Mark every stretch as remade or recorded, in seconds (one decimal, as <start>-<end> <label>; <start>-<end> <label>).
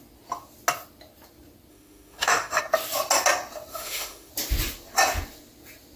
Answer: 0.0-1.7 recorded; 1.7-2.6 remade; 2.6-3.7 recorded; 3.7-4.3 remade; 4.3-6.0 recorded